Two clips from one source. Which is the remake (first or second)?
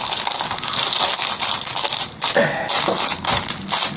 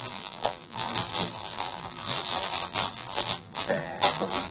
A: second